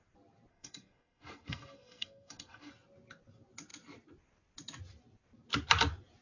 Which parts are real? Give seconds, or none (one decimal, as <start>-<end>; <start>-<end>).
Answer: 0.0-0.5; 2.7-6.2